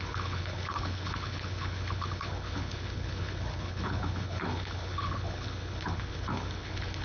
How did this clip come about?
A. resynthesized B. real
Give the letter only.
A